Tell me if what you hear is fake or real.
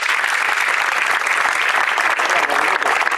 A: real